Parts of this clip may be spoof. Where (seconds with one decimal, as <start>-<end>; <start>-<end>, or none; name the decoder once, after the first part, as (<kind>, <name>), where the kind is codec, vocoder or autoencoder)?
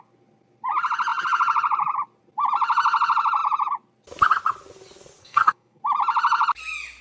5.2-5.8 (codec, SNAC)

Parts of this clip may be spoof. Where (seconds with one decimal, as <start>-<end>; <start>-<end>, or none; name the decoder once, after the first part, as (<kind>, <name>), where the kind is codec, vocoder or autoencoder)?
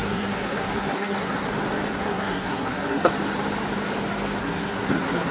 0.0-1.5 (codec, SNAC); 1.9-3.1; 4.4-5.3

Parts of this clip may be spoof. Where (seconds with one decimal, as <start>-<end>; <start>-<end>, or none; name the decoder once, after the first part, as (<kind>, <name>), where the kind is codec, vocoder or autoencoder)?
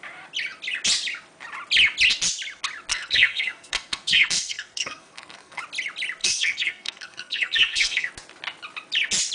2.9-5.6 (codec, SNAC); 6.2-8.1